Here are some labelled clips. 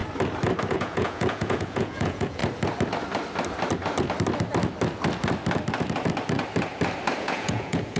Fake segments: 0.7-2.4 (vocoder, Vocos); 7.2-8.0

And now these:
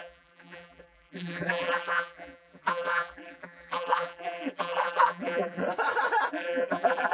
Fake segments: 0.0-5.6 (vocoder, BigVGAN v2); 6.3-7.1

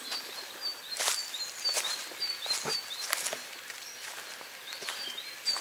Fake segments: none

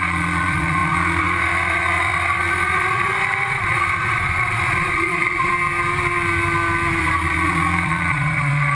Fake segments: 0.0-5.5 (vocoder, Vocos); 7.0-8.7

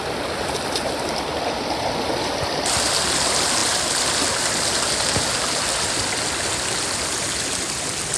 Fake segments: none